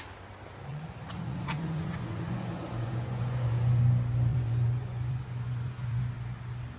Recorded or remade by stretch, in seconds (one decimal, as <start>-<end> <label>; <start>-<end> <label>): 0.0-0.7 recorded; 0.7-3.8 remade; 3.8-4.3 recorded; 4.3-6.0 remade; 6.0-6.8 recorded